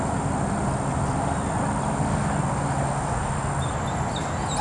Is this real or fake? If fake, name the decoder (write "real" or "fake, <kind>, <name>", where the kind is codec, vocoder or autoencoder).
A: real